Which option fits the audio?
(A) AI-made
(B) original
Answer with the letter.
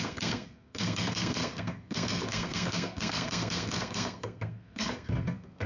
A